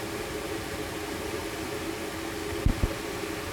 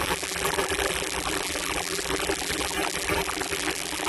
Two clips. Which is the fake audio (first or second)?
second